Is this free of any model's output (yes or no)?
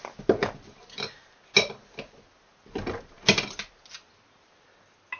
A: yes